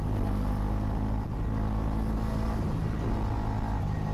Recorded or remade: recorded